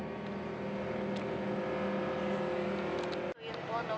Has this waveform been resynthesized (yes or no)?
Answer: no